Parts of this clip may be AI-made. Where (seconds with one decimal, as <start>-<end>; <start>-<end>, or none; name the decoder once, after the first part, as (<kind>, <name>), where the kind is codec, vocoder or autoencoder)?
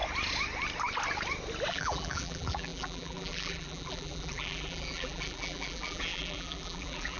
1.7-7.2 (vocoder, BigVGAN v2)